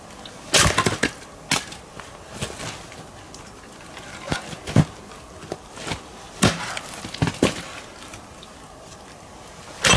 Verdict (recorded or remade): recorded